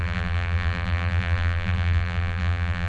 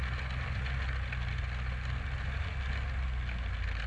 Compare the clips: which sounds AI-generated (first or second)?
first